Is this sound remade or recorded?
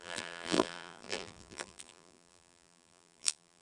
remade